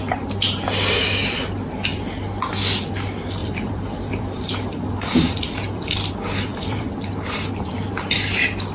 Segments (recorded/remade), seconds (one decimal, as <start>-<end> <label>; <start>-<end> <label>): 0.0-3.4 recorded; 3.4-6.1 remade; 6.1-6.5 recorded; 6.5-7.0 remade; 7.0-8.7 recorded